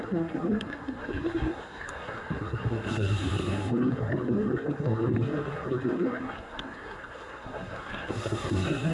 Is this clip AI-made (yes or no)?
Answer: yes